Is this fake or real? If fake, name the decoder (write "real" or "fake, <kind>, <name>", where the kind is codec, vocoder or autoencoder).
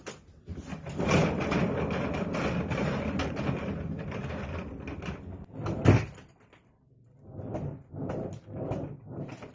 real